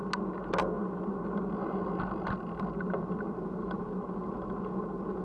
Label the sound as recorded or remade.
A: recorded